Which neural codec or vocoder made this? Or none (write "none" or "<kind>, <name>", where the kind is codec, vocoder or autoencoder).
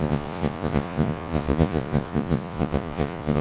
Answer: vocoder, Vocos